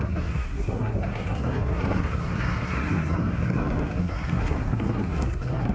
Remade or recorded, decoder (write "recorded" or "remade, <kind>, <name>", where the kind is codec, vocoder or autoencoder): remade, codec, SNAC